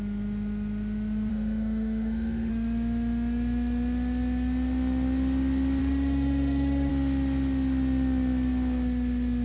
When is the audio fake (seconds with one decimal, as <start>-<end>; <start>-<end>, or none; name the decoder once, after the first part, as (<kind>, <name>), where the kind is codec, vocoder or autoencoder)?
1.3-2.5 (autoencoder, DAC-VAE); 5.8-6.9